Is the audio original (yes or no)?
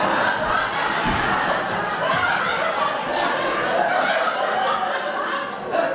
yes